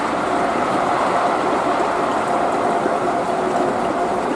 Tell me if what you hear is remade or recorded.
recorded